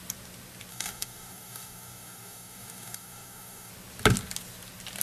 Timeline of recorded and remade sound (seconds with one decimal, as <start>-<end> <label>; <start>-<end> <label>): 0.0-0.7 recorded; 0.7-3.7 remade; 3.7-5.0 recorded